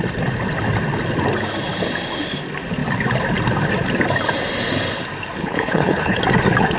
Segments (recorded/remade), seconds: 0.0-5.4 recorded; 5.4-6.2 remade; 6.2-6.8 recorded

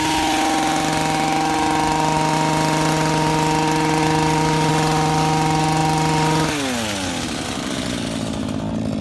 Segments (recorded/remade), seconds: 0.0-9.0 recorded

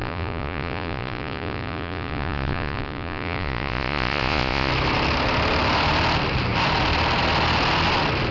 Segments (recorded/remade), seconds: 0.0-4.7 remade; 4.7-8.3 recorded

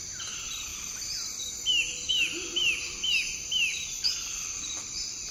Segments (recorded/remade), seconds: 0.0-5.3 recorded

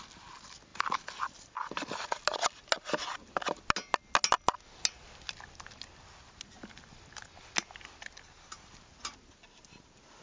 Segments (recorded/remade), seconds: 0.0-10.2 recorded

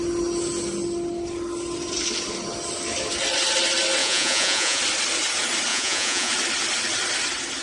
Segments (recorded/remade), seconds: 0.0-4.0 recorded; 4.0-4.8 remade; 4.8-5.7 recorded; 5.7-6.3 remade; 6.3-7.6 recorded